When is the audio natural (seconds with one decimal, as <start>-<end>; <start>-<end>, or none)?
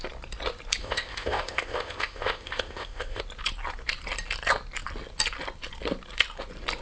0.0-0.8; 3.2-6.8